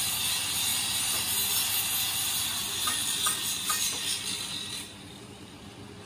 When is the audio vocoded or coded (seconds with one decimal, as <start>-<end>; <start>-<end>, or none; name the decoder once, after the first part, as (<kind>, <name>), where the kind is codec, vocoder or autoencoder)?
none

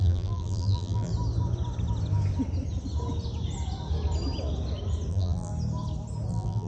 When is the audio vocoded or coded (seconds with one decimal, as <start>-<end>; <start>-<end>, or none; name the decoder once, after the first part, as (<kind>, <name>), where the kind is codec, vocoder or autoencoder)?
0.0-1.1 (vocoder, BigVGAN v2); 5.1-5.5; 6.3-6.7

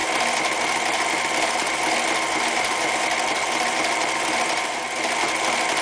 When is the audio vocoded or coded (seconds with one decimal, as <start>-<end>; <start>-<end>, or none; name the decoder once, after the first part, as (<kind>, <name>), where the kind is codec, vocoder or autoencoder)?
none